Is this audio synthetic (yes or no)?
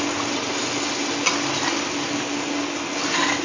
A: no